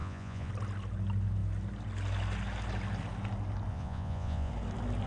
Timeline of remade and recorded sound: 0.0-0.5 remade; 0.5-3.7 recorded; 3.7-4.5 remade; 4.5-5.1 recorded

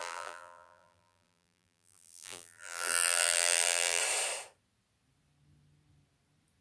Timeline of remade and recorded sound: 0.0-4.0 remade; 4.0-6.6 recorded

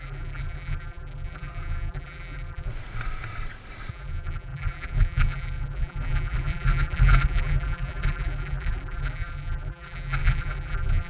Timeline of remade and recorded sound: 0.0-2.7 remade; 2.7-3.9 recorded; 3.9-11.1 remade